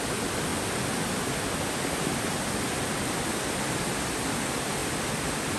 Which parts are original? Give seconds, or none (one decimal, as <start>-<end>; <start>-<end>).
0.0-5.6